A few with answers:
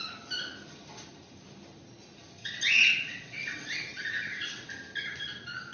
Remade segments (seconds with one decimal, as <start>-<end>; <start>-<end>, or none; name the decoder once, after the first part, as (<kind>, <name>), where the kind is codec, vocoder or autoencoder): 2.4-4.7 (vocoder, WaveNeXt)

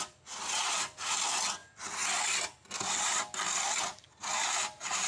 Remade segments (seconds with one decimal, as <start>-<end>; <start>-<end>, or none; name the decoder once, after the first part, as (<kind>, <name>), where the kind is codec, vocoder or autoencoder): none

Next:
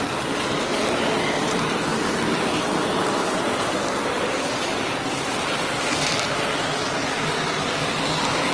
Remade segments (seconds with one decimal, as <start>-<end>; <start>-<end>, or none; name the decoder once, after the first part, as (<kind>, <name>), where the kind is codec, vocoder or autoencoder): none